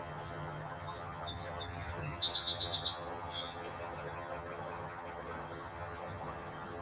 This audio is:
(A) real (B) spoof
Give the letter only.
B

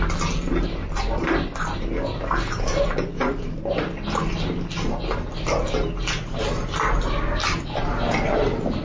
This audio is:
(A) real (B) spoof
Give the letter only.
A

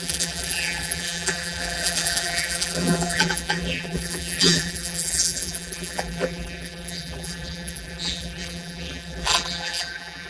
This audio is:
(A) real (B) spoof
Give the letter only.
B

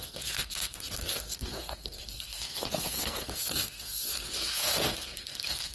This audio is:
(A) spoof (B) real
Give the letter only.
A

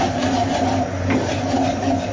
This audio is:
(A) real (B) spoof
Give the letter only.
A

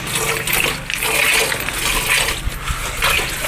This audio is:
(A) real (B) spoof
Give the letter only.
A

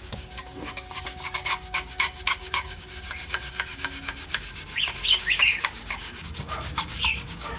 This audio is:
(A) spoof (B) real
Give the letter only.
A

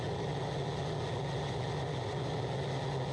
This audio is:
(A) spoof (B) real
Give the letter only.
B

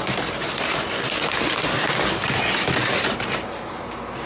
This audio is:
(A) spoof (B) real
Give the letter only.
B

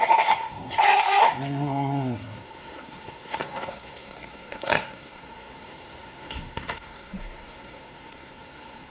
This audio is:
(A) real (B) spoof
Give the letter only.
B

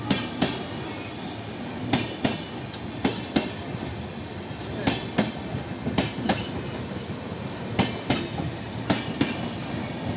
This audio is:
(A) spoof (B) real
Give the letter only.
B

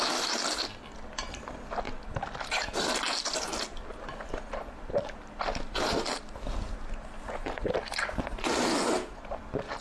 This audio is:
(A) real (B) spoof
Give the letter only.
A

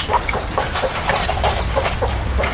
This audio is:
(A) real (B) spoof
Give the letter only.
A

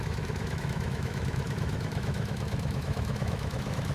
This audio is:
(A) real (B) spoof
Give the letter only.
B